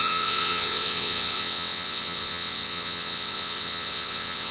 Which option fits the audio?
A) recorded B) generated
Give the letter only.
B